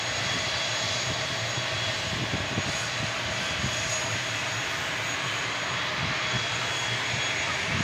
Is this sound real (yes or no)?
yes